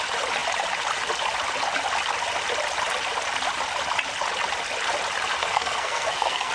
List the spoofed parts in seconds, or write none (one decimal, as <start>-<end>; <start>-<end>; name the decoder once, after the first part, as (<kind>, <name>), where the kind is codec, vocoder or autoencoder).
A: 5.4-6.5 (codec, SNAC)